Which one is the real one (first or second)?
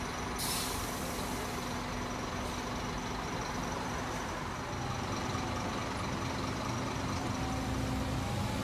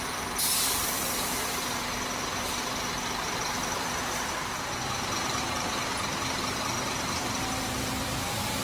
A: first